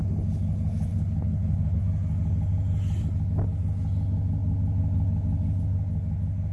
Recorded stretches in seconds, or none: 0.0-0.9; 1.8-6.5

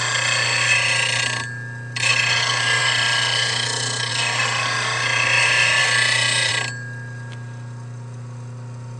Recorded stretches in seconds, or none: 0.0-9.0

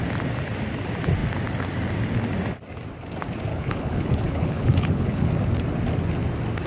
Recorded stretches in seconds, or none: 0.0-3.5; 5.3-6.7

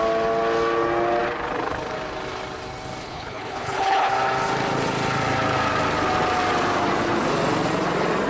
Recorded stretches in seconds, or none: 0.0-3.0; 4.1-8.3

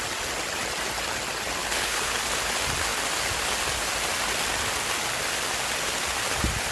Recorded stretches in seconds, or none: 0.0-1.6; 2.2-6.7

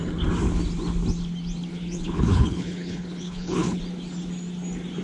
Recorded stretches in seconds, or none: 0.0-1.7; 3.8-5.0

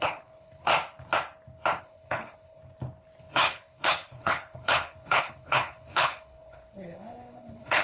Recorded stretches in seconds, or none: 0.7-1.8; 2.6-3.2

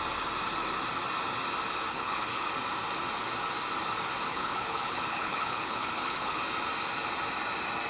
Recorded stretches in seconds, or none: 0.0-1.9; 2.5-4.3; 6.4-7.9